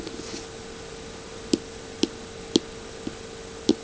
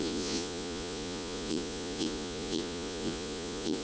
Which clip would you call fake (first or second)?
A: second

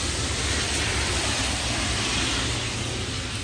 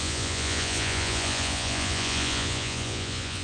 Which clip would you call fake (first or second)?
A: second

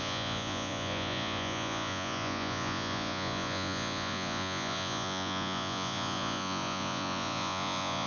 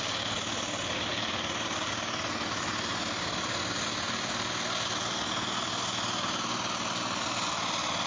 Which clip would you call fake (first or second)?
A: first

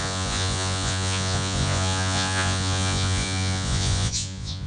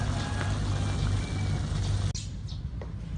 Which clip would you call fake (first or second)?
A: first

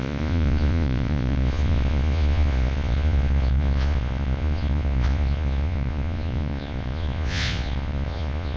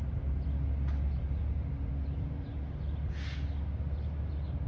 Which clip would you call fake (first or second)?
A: first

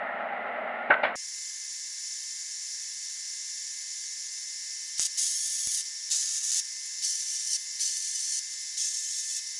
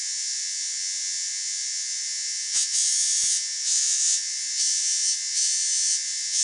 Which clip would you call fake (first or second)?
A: second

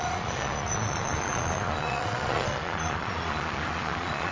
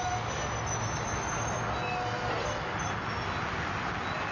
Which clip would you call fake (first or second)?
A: first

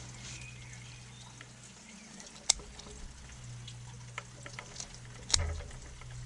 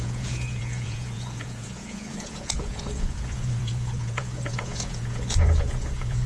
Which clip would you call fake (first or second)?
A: second